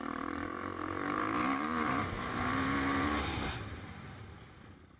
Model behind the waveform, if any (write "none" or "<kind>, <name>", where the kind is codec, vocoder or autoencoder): vocoder, BigVGAN v2